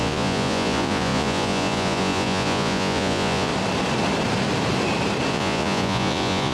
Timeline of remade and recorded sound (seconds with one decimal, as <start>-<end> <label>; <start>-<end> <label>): 0.0-3.5 remade; 3.5-5.3 recorded; 5.3-6.5 remade